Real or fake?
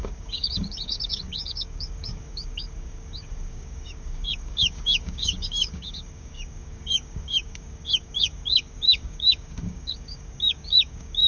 fake